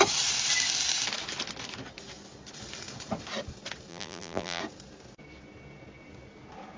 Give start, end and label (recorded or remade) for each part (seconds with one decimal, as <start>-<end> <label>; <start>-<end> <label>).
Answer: 0.0-3.9 recorded; 3.9-4.6 remade; 4.6-6.8 recorded